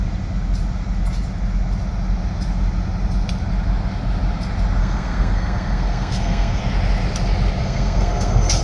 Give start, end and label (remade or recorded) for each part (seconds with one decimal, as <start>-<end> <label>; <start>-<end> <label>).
0.0-4.8 recorded; 4.8-6.6 remade; 6.6-7.6 recorded; 7.6-8.6 remade